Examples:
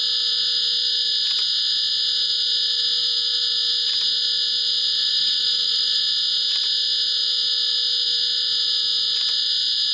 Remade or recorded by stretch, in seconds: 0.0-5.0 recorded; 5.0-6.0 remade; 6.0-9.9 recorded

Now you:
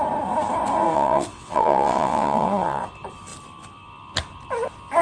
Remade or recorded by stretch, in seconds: 0.0-0.9 recorded; 0.9-2.8 remade; 2.8-5.0 recorded

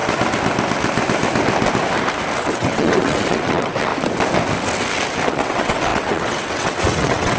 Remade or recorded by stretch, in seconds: 0.0-2.4 recorded; 2.4-3.9 remade; 3.9-5.3 recorded; 5.3-7.4 remade

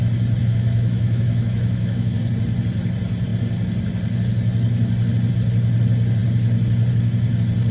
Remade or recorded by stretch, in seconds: 0.0-0.4 recorded; 0.4-2.2 remade; 2.2-7.7 recorded

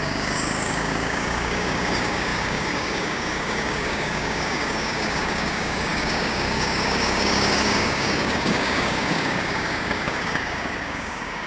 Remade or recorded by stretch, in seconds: 0.0-11.5 remade

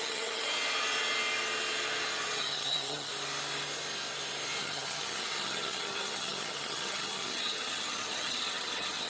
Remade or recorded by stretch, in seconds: 0.0-0.5 remade; 0.5-2.4 recorded; 2.4-3.1 remade; 3.1-4.6 recorded; 4.6-9.1 remade

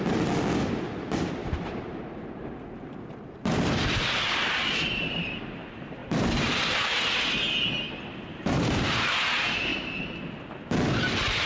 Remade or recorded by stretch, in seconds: 0.0-1.4 recorded; 1.4-5.4 remade; 5.4-6.0 recorded; 6.0-6.9 remade; 6.9-8.3 recorded; 8.3-9.1 remade; 9.1-11.5 recorded

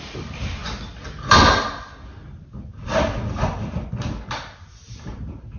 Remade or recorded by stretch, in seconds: 0.0-5.6 recorded